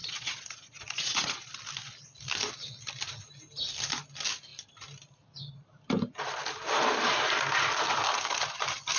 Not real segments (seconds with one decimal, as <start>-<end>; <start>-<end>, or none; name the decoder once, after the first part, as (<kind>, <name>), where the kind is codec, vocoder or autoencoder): 0.0-1.5 (vocoder, Vocos)